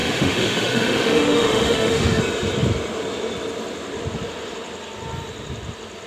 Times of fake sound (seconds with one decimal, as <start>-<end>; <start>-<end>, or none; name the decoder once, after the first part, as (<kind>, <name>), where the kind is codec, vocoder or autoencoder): 0.0-2.2 (autoencoder, DAC-VAE)